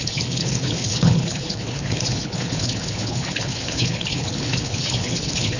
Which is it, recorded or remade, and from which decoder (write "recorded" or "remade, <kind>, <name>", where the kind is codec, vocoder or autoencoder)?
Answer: remade, codec, HILCodec